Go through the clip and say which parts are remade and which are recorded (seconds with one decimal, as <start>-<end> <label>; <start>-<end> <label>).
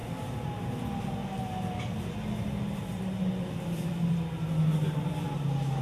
0.0-5.8 recorded